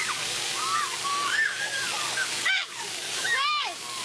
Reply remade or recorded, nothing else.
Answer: remade